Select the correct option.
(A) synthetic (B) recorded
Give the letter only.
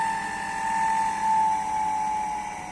B